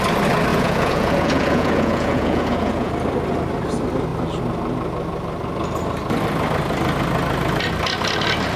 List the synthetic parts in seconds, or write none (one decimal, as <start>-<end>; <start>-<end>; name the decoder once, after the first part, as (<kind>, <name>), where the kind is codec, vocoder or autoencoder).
0.5-2.9 (vocoder, Vocos)